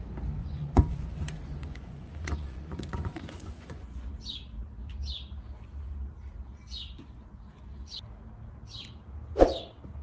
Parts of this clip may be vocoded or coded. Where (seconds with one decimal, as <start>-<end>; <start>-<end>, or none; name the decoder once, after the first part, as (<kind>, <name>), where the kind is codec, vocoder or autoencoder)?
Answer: 0.4-4.1 (vocoder, Vocos)